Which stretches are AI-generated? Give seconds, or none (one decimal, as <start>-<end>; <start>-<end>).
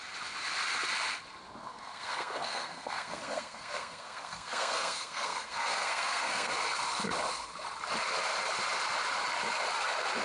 1.6-6.5